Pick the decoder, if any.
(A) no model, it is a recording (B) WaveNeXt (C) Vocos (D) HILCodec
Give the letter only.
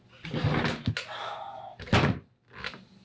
A